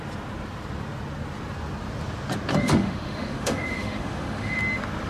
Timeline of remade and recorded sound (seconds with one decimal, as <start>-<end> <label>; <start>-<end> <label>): 0.0-2.5 recorded; 2.5-4.6 remade; 4.6-5.1 recorded